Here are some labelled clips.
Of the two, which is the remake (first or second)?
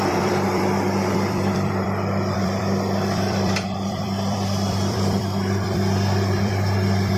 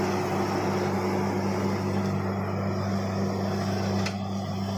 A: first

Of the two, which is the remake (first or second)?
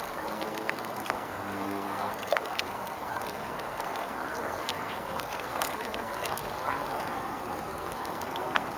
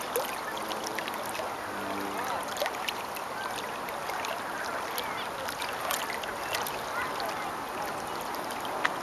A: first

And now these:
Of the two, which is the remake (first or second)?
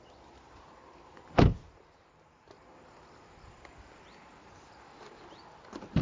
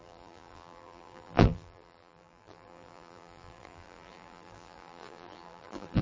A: second